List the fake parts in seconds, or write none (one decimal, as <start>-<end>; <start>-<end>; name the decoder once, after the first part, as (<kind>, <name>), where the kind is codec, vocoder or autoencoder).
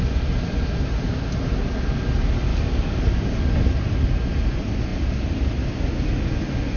2.5-3.5 (codec, DAC)